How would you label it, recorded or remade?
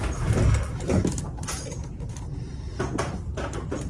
recorded